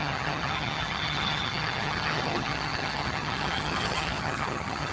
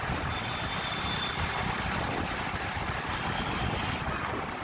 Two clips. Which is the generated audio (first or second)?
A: first